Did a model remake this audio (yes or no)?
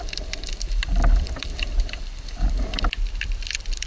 yes